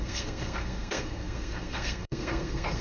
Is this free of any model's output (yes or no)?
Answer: no